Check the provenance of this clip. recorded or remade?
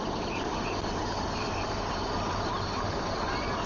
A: remade